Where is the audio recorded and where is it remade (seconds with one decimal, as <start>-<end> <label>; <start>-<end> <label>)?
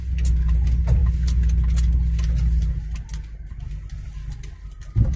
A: 0.0-5.2 recorded